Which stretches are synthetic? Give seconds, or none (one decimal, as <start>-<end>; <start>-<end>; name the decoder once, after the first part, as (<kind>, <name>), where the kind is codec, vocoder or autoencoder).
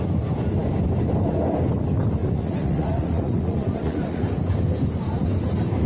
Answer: 2.2-4.3 (vocoder, Vocos)